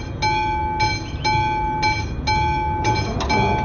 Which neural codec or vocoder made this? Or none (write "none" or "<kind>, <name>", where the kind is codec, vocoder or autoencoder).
none